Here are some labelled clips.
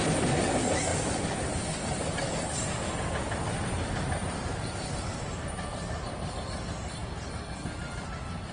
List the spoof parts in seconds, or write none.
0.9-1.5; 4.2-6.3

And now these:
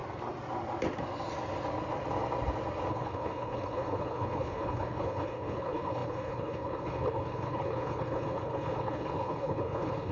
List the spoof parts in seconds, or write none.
2.9-10.1

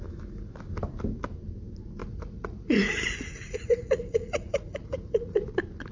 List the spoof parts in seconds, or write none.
2.0-5.5

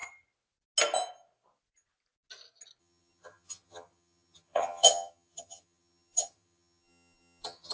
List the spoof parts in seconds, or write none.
2.8-7.7

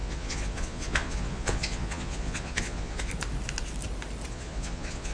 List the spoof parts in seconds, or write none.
0.0-3.1; 4.3-5.1

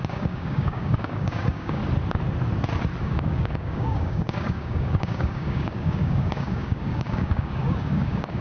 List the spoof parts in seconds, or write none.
0.0-1.8; 3.0-8.4